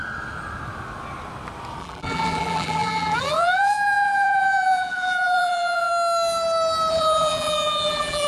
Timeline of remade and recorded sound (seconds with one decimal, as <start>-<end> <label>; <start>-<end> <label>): 0.0-1.8 recorded; 1.8-5.9 remade; 5.9-6.9 recorded; 6.9-8.3 remade